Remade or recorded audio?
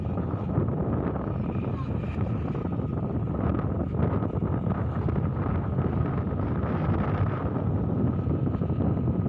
recorded